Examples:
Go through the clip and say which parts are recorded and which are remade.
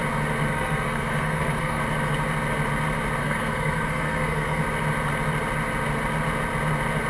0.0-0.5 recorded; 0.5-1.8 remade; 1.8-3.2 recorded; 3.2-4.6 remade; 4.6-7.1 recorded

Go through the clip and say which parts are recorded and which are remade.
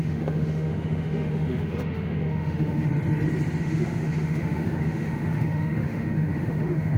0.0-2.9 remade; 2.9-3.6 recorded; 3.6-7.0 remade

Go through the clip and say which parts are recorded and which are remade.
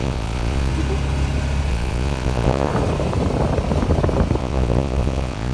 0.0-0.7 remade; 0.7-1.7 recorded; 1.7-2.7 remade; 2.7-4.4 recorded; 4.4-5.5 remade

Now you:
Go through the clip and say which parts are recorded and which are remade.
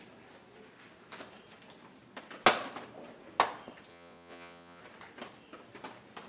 0.0-3.9 recorded; 3.9-4.8 remade; 4.8-6.3 recorded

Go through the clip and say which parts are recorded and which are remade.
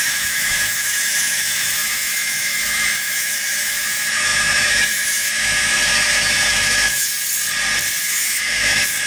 0.0-7.1 remade; 7.1-8.0 recorded; 8.0-9.1 remade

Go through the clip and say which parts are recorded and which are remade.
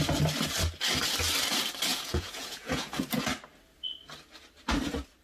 0.0-1.9 recorded; 1.9-2.9 remade; 2.9-5.2 recorded